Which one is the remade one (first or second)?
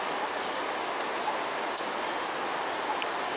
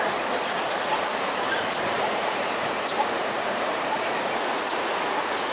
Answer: second